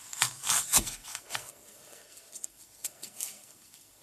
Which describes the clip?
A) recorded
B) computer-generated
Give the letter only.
B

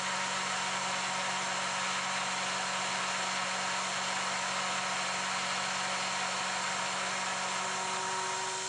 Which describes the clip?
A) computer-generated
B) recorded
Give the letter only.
B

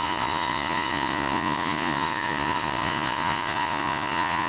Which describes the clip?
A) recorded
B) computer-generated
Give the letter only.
B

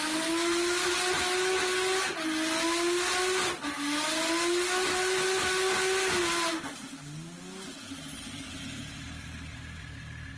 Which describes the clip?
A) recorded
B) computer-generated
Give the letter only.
A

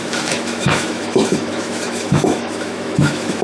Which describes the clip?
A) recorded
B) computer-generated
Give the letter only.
B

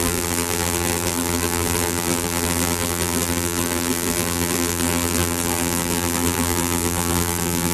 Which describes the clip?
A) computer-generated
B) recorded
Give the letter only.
A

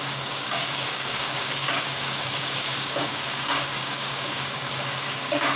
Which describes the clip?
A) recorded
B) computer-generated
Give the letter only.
B